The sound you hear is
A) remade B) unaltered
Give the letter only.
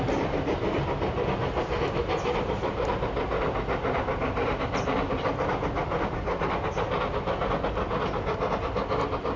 B